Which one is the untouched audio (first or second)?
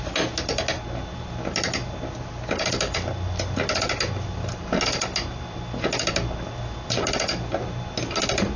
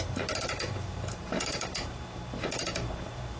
first